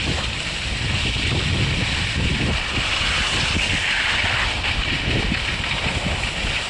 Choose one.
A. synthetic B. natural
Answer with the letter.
B